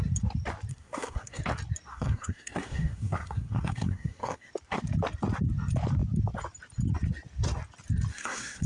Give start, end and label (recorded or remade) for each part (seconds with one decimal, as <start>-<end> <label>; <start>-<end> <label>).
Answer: 0.0-0.7 recorded; 0.7-1.4 remade; 1.4-1.9 recorded; 1.9-4.5 remade; 4.5-8.1 recorded; 8.1-8.7 remade